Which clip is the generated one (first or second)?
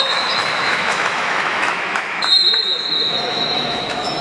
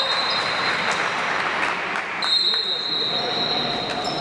first